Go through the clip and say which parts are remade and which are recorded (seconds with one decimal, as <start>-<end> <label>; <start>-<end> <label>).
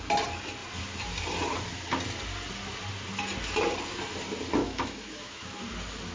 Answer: 0.0-4.6 recorded; 4.6-5.6 remade; 5.6-6.1 recorded